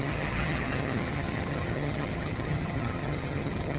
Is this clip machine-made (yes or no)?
yes